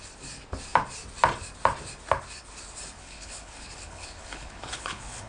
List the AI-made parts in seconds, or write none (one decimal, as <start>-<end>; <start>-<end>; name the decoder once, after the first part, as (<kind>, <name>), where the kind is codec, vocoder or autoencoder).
3.0-5.3 (codec, HILCodec)